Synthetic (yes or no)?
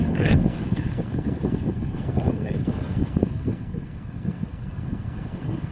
yes